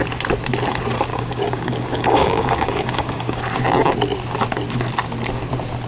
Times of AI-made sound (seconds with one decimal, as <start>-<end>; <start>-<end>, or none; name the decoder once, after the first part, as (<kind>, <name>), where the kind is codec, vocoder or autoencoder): 1.1-3.4 (codec, DAC)